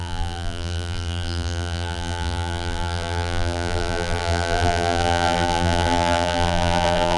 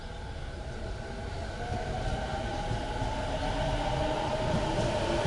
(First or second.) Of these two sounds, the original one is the second